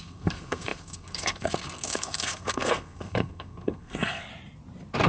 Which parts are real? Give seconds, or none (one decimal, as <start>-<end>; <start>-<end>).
4.3-5.1